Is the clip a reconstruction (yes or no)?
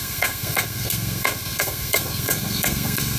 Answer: yes